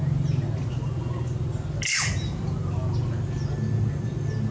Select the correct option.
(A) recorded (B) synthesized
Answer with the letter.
A